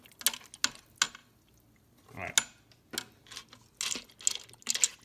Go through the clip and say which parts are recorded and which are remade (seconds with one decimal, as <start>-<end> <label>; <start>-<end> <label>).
0.0-5.0 recorded